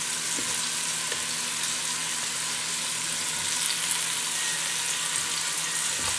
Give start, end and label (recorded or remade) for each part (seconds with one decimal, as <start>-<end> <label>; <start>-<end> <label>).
0.0-6.2 recorded